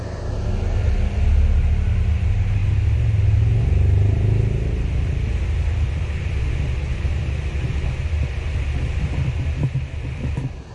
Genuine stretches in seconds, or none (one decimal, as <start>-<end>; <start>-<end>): 0.0-10.7